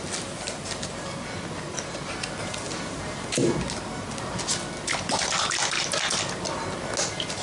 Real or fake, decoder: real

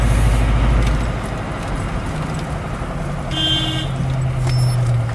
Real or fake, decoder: real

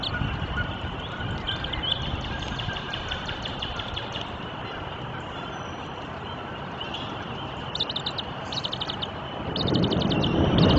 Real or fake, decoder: real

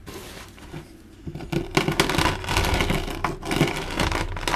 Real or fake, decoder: real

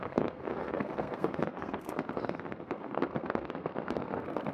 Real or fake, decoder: fake, codec, SNAC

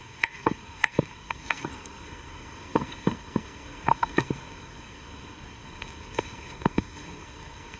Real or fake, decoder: fake, codec, SNAC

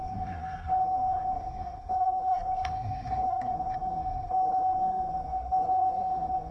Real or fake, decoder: fake, codec, SNAC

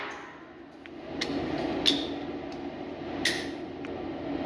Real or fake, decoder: real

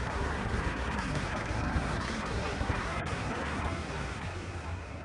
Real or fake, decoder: fake, codec, SNAC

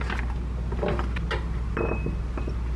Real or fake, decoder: real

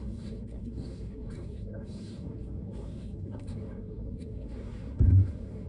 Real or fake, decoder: fake, codec, SNAC